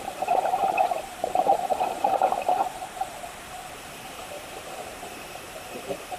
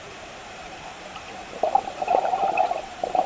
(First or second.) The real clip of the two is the second